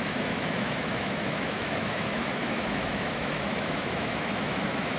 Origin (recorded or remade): remade